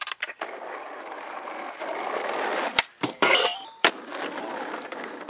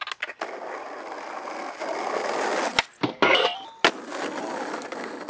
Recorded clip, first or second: second